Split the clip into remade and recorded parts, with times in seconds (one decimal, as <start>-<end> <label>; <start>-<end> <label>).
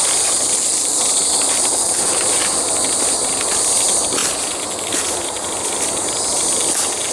0.0-7.1 recorded